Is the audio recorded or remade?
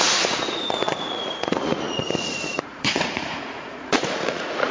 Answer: remade